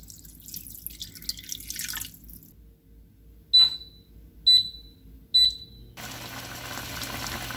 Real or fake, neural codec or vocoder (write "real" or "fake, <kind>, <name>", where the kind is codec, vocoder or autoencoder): real